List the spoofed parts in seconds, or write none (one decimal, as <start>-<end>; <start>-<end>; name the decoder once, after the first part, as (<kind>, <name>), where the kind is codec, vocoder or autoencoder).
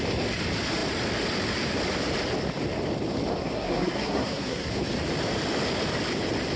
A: 3.4-4.7 (codec, SNAC)